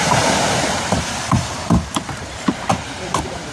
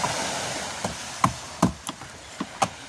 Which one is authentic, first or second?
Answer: second